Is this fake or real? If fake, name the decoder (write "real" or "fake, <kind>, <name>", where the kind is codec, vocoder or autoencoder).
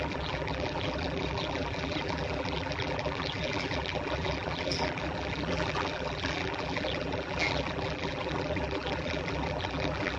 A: fake, vocoder, BigVGAN v2